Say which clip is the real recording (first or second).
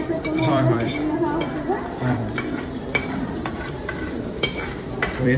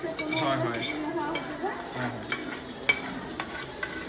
second